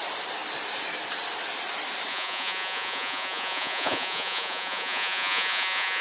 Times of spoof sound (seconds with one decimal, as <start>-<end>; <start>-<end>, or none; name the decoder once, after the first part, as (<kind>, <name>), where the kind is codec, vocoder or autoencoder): 2.1-6.0 (vocoder, Vocos)